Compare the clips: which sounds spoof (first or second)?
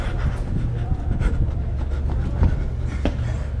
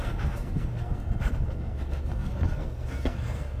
second